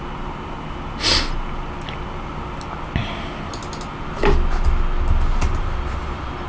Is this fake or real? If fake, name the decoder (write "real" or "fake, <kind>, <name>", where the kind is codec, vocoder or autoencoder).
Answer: real